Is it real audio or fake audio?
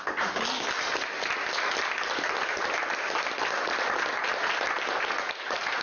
real